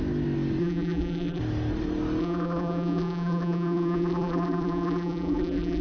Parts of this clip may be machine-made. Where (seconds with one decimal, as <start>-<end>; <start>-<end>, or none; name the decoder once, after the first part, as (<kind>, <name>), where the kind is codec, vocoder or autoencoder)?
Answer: 0.6-1.4 (vocoder, BigVGAN v2); 2.2-5.8